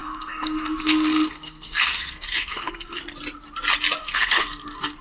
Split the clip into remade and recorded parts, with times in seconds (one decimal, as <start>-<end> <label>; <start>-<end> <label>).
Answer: 0.0-3.0 remade; 3.0-4.0 recorded; 4.0-5.0 remade